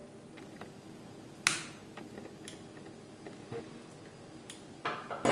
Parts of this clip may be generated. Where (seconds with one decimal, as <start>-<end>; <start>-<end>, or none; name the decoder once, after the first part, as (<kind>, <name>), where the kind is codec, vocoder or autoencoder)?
none